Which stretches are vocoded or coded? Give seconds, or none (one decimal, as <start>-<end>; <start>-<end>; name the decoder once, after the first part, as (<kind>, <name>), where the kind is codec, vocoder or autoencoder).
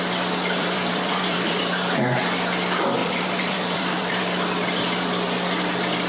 0.6-1.6 (vocoder, BigVGAN v2); 3.0-4.2